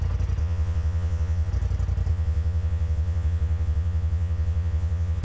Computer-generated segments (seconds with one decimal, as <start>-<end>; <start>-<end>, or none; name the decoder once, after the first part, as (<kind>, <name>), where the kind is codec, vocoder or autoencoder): 0.4-1.5 (vocoder, Vocos); 2.1-5.2

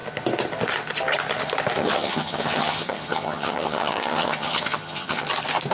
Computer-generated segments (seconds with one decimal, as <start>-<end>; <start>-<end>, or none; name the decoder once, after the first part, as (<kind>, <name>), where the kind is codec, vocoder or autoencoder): 1.8-5.2 (vocoder, HiFi-GAN)